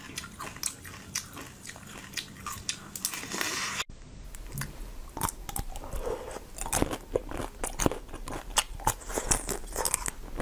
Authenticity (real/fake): real